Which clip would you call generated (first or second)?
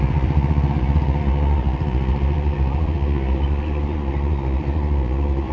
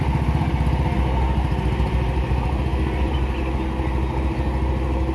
first